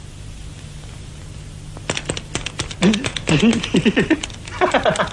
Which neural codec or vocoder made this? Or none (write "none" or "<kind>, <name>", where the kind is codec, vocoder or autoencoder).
none